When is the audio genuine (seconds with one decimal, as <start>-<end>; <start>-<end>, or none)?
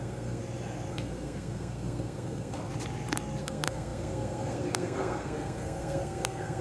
0.4-0.9; 2.7-3.4